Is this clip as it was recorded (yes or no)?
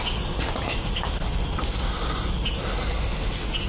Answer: yes